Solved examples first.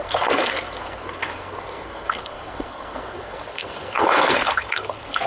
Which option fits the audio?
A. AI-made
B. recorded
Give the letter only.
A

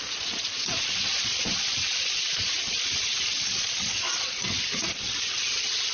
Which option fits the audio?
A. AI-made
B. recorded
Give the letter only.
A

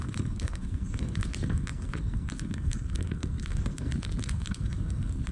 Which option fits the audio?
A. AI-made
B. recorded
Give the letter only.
A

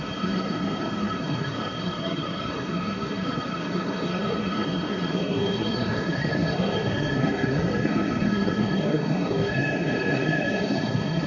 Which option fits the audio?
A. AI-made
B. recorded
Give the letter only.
A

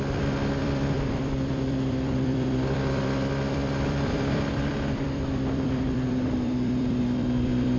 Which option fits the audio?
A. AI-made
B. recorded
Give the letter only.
A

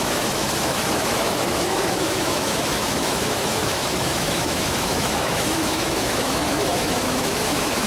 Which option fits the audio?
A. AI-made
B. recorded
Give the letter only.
A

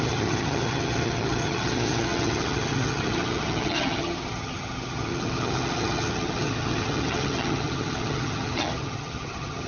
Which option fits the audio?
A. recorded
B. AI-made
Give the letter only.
B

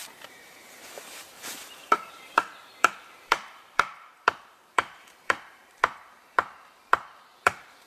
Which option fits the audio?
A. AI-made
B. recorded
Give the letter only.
A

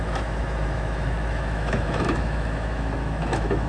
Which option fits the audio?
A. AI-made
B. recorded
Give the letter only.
A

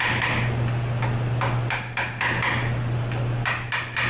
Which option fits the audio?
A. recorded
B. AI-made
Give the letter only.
A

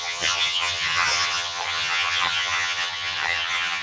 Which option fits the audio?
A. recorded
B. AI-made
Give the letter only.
B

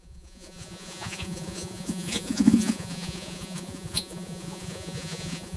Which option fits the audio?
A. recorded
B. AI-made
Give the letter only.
B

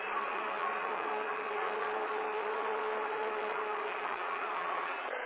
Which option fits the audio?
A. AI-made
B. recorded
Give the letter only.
A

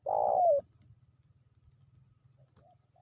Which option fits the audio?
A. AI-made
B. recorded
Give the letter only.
B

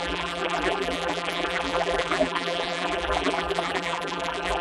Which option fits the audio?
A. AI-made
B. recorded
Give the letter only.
A